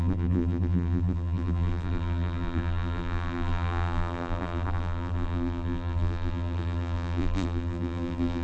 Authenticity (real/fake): fake